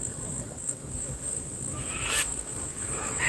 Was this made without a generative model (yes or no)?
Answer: no